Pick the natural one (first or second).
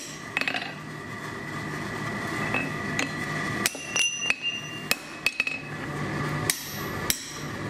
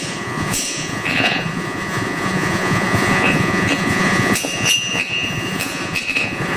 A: first